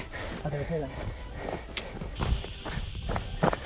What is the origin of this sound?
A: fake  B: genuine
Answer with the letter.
B